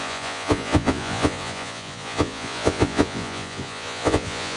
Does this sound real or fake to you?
fake